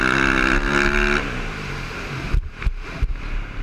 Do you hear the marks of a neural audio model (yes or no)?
no